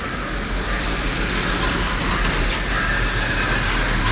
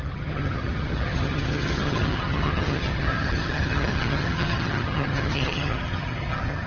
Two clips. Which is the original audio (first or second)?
first